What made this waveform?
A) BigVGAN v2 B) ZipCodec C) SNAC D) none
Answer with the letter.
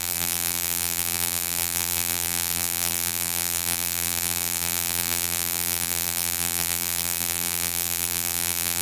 A